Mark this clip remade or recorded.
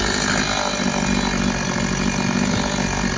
recorded